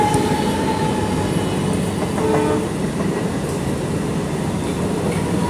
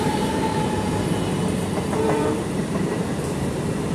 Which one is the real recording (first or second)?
first